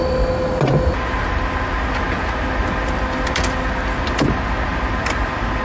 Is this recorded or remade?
recorded